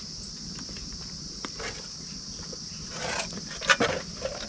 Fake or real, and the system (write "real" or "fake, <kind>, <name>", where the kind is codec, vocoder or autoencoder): real